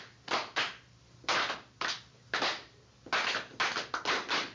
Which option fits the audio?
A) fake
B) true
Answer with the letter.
B